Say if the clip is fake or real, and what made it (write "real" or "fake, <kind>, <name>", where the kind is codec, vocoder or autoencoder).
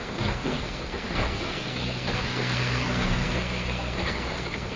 fake, codec, SNAC